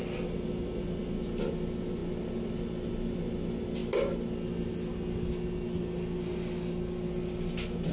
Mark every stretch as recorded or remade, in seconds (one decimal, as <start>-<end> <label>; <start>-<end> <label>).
0.0-7.9 recorded